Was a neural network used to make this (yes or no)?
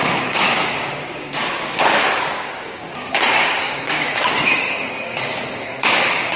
yes